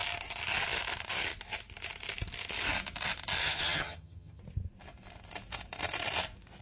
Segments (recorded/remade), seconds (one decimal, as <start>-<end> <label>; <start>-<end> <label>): 0.0-3.4 recorded; 3.4-4.4 remade; 4.4-6.6 recorded